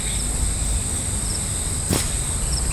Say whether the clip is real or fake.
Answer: real